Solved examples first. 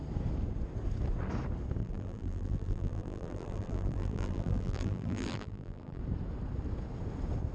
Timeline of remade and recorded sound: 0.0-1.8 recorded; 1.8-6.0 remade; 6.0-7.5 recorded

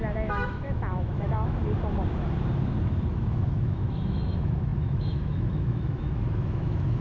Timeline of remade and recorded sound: 0.0-1.6 remade; 1.6-3.1 recorded; 3.1-7.0 remade

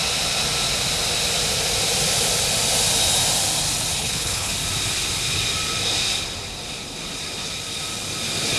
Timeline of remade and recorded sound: 0.0-3.9 recorded; 3.9-4.5 remade; 4.5-8.6 recorded

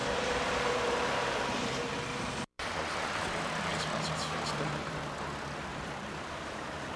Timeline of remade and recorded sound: 0.0-2.7 remade; 2.7-3.7 recorded; 3.7-5.0 remade; 5.0-5.7 recorded; 5.7-7.0 remade